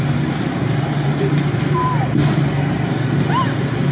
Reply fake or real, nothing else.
real